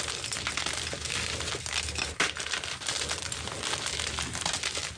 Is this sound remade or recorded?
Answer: recorded